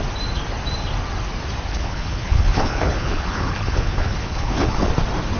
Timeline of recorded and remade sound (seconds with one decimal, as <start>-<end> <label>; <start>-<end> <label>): 0.0-1.7 recorded; 1.7-4.9 remade; 4.9-5.4 recorded